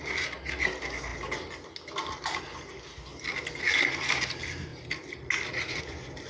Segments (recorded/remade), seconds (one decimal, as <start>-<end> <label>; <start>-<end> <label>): 0.0-6.3 recorded